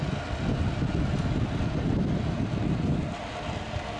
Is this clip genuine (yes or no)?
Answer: yes